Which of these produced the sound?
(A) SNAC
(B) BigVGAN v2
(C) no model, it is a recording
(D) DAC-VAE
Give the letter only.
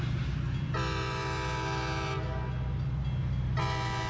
C